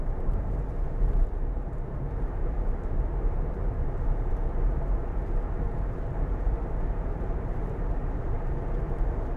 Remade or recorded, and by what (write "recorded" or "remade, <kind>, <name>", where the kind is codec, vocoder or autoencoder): remade, vocoder, BigVGAN v2